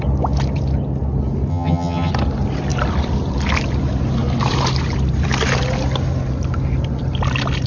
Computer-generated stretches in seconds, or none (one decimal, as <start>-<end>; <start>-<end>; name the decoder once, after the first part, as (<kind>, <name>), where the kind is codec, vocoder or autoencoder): 1.5-2.1 (vocoder, HiFi-GAN)